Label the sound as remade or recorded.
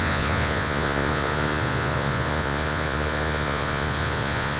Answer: remade